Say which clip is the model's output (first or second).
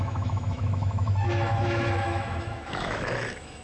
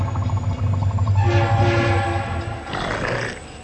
first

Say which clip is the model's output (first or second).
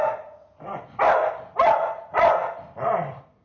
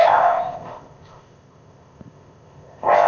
second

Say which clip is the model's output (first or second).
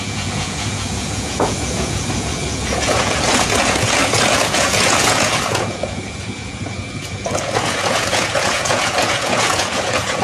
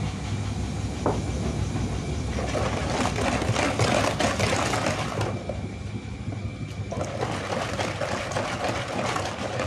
first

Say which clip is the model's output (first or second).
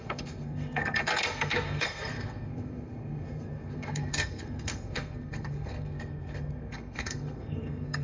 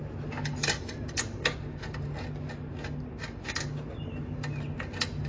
first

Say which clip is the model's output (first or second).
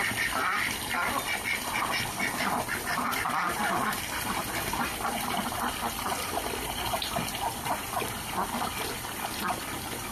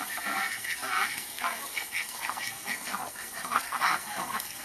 second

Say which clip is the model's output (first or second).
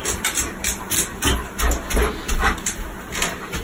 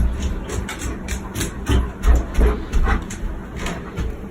first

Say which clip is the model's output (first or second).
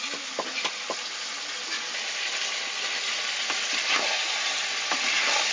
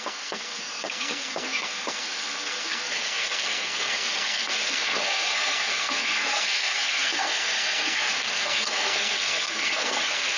second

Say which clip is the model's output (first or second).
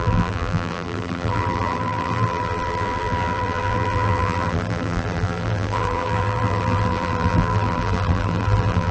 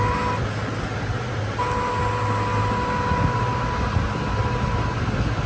first